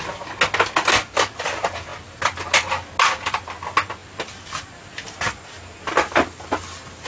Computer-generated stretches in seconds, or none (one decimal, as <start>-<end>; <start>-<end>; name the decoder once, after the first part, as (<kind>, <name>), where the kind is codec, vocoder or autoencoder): none